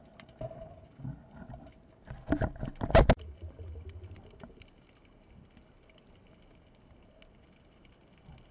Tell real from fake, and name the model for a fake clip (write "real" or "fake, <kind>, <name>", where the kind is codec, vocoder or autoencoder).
real